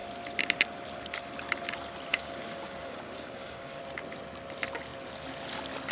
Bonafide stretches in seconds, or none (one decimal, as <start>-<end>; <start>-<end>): 0.0-2.1; 3.8-5.9